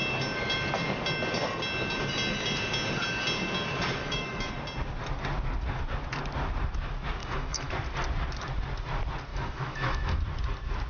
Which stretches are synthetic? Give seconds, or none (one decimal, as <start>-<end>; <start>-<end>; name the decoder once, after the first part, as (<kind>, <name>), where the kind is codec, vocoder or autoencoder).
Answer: 4.0-4.5 (autoencoder, DAC-VAE); 7.2-7.7; 9.3-10.2